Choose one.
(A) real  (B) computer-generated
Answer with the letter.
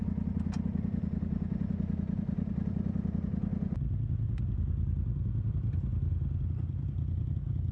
A